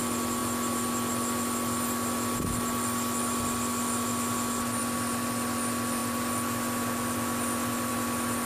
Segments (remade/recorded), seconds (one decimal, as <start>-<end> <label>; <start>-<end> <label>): 0.0-6.0 recorded; 6.0-7.9 remade; 7.9-8.4 recorded